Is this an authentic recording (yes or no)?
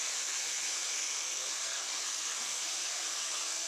no